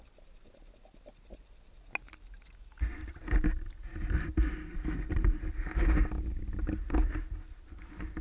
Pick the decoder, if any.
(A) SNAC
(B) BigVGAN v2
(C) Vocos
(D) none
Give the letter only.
D